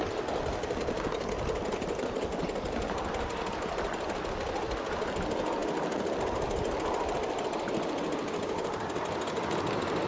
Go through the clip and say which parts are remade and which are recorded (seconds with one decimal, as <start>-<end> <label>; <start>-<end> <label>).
0.0-10.1 recorded